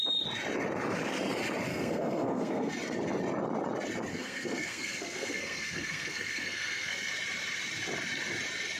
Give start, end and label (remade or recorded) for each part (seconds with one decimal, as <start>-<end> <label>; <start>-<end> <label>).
0.0-1.7 recorded; 1.7-2.7 remade; 2.7-4.1 recorded; 4.1-7.1 remade; 7.1-8.8 recorded